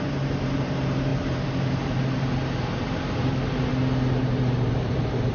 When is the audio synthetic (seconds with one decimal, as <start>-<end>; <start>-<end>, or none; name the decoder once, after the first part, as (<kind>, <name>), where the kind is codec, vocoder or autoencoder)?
0.0-3.7 (vocoder, BigVGAN v2); 4.2-5.3